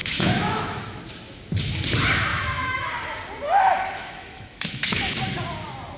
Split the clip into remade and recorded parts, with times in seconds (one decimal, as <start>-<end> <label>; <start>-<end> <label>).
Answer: 0.0-1.0 remade; 1.0-2.3 recorded; 2.3-2.9 remade; 2.9-4.0 recorded; 4.0-5.1 remade; 5.1-6.0 recorded